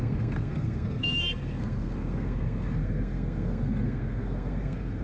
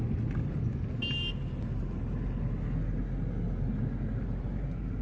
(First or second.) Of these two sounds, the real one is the second